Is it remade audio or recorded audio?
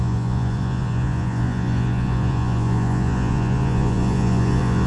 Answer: remade